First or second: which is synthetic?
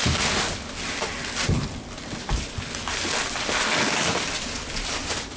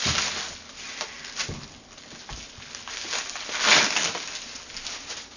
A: first